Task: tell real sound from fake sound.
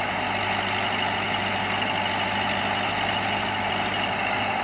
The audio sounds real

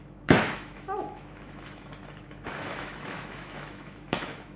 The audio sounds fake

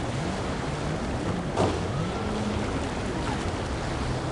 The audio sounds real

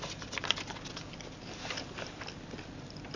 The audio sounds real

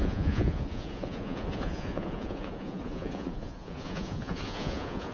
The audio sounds fake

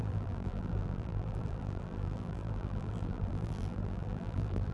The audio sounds fake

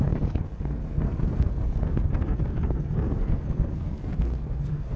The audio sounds fake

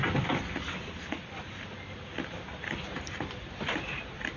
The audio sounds real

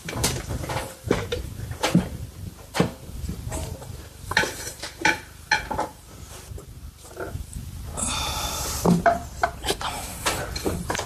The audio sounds fake